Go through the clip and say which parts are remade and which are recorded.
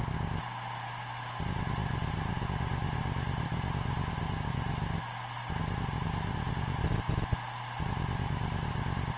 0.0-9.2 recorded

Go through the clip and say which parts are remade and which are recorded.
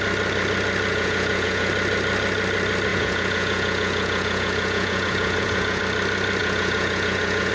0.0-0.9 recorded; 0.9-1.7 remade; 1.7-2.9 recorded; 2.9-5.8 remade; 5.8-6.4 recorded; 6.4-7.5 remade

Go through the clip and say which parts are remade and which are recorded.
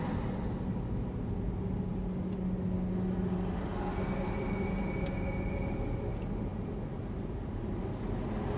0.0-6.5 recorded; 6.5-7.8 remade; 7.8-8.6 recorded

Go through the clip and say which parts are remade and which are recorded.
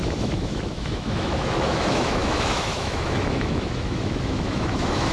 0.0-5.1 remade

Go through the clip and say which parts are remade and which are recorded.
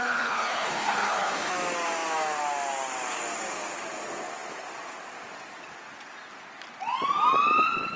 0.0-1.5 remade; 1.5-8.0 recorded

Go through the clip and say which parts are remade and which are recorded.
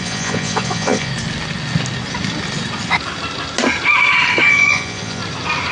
0.0-1.1 remade; 1.1-4.5 recorded; 4.5-5.2 remade; 5.2-5.7 recorded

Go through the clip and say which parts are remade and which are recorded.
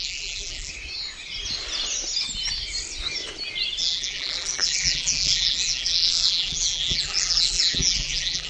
0.0-0.7 remade; 0.7-3.8 recorded; 3.8-8.5 remade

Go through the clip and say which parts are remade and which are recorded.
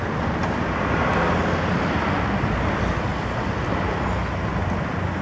0.0-0.4 recorded; 0.4-1.1 remade; 1.1-3.1 recorded; 3.1-4.2 remade; 4.2-5.2 recorded